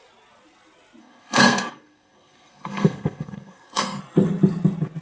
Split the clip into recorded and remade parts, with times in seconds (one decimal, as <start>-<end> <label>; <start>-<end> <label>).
0.0-1.0 recorded; 1.0-4.0 remade; 4.0-5.0 recorded

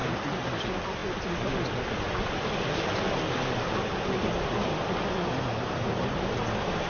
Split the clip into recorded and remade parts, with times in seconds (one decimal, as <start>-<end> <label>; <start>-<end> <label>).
0.0-6.9 recorded

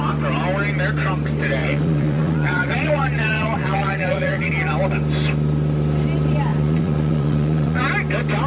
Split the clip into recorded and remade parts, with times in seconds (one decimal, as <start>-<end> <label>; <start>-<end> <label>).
0.0-1.6 recorded; 1.6-4.5 remade; 4.5-6.5 recorded; 6.5-7.8 remade; 7.8-8.5 recorded

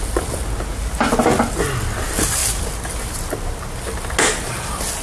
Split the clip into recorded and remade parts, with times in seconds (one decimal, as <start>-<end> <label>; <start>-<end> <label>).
0.0-5.0 recorded